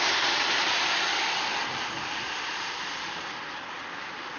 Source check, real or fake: real